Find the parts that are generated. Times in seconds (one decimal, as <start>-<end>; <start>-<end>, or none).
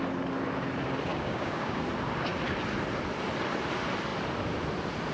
1.1-1.8